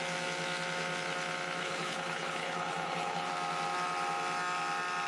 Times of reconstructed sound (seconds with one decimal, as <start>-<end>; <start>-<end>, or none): 1.6-3.3